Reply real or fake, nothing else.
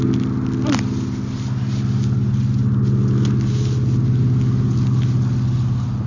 real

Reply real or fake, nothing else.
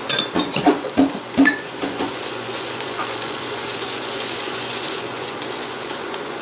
fake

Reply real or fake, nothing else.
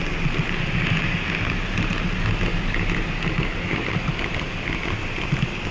real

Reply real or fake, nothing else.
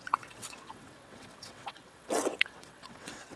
fake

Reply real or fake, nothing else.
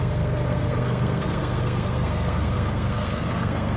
fake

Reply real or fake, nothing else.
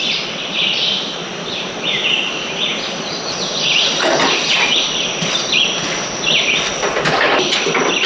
real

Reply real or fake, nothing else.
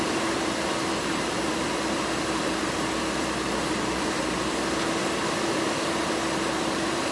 fake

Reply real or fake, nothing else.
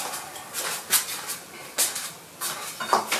real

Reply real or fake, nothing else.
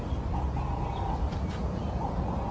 real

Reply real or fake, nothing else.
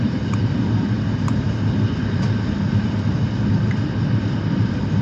real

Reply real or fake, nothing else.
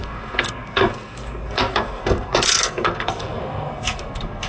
fake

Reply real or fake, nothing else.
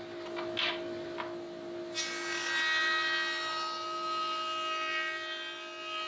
real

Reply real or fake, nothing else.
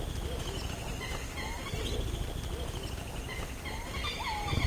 real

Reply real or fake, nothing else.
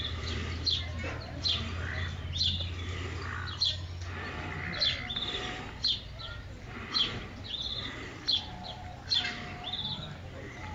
fake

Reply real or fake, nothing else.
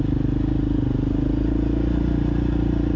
real